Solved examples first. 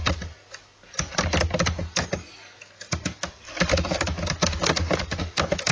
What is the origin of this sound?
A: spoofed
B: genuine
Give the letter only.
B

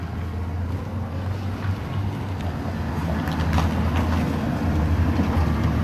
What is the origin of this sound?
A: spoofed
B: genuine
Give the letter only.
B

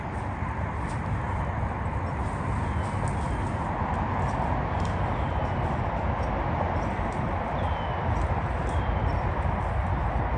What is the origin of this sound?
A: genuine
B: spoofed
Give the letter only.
A